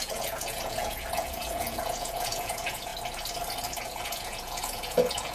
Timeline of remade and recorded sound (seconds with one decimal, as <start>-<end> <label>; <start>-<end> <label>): 0.0-2.9 remade; 2.9-3.8 recorded; 3.8-5.3 remade